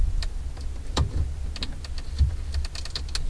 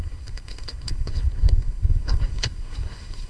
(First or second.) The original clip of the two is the first